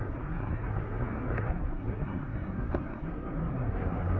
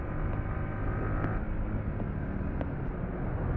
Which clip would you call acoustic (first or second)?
second